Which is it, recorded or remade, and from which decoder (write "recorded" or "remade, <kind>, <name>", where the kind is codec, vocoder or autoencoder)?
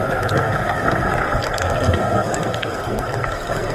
remade, codec, SNAC